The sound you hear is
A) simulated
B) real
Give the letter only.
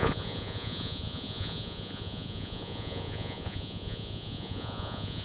A